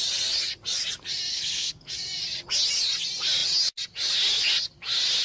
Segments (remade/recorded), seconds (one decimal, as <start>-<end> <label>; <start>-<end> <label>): 0.0-1.3 recorded; 1.3-1.9 remade; 1.9-5.2 recorded